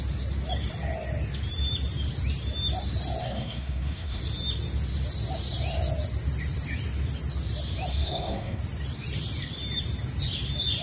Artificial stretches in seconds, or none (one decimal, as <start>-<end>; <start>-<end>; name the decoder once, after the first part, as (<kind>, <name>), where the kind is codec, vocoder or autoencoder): 3.2-4.2 (codec, SNAC); 7.9-8.6